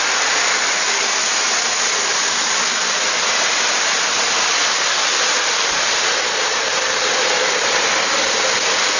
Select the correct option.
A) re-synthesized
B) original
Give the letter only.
B